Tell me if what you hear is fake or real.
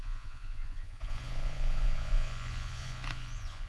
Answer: fake